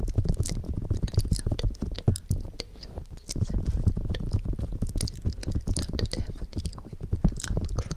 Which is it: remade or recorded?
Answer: recorded